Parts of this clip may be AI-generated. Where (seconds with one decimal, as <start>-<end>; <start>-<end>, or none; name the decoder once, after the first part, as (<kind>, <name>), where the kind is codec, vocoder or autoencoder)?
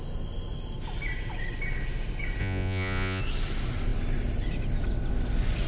2.4-3.2 (vocoder, Vocos)